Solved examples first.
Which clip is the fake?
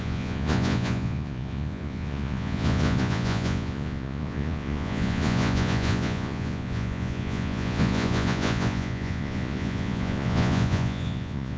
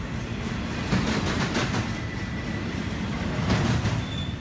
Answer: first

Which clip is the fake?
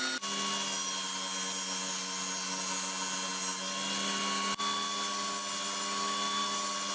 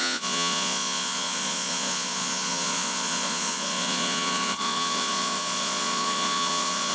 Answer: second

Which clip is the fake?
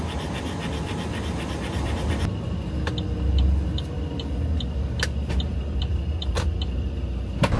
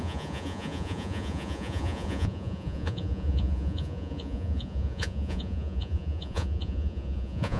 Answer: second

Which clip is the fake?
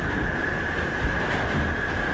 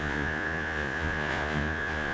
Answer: second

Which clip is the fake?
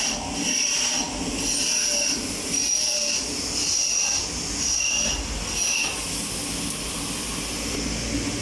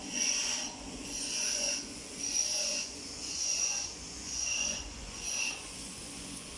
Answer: second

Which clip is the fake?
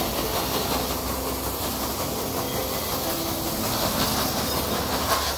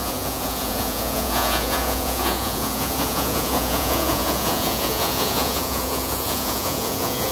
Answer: second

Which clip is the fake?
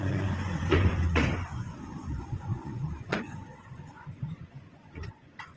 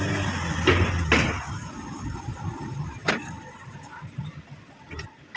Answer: first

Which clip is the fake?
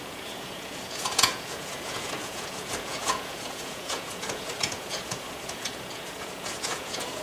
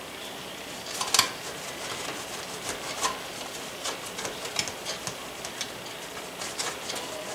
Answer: first